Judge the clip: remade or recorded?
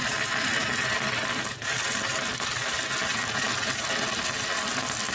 remade